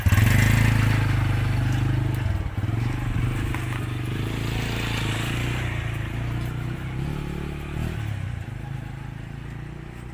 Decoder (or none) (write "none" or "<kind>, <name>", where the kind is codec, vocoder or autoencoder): none